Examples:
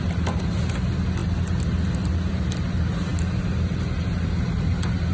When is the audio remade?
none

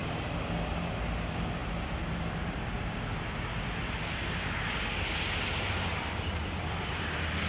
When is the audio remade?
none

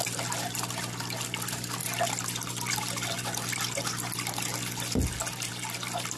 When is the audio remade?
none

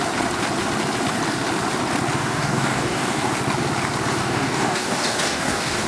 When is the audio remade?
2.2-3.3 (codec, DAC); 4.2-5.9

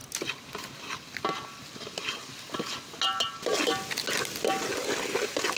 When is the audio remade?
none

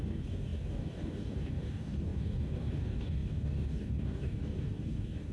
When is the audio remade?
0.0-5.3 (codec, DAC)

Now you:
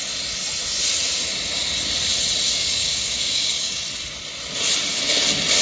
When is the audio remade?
2.5-3.8 (codec, DAC)